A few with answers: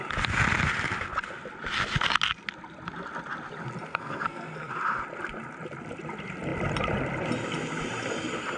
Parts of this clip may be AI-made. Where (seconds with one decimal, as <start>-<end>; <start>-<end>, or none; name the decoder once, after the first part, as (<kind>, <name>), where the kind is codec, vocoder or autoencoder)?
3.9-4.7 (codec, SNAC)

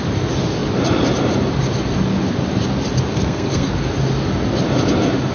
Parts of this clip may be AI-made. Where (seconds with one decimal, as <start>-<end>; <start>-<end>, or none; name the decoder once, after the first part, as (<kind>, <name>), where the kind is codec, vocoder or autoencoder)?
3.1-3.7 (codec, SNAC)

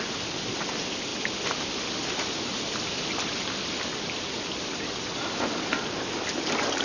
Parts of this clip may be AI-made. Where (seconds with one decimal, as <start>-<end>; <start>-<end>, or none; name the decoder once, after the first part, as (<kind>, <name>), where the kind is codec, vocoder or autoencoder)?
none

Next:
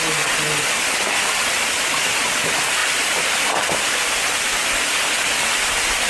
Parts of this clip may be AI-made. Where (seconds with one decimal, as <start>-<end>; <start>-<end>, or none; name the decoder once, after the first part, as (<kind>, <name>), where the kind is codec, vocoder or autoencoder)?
none

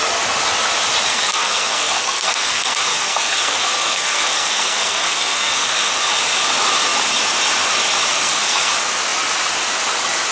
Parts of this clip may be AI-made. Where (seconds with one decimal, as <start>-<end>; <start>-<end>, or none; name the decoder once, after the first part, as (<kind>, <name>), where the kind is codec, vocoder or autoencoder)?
1.1-6.0 (codec, SNAC); 8.1-8.7